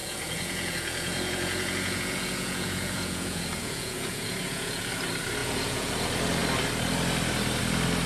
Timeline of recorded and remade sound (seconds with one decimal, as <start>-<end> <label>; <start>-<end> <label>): 0.0-4.9 remade; 4.9-5.4 recorded; 5.4-5.9 remade; 5.9-8.1 recorded